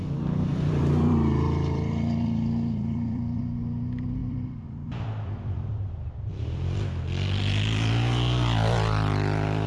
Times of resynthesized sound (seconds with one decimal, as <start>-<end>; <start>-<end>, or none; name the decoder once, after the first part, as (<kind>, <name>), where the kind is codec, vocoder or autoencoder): 0.5-3.4 (vocoder, BigVGAN v2); 4.2-6.8